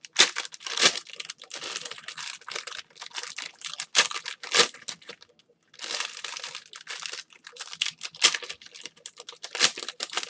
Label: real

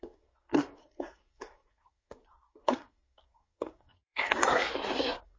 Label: fake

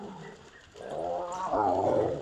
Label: fake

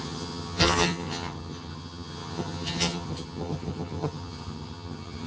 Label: fake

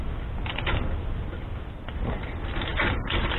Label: real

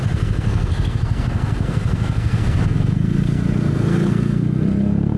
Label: fake